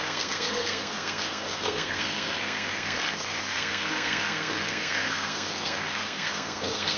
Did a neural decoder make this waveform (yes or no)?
yes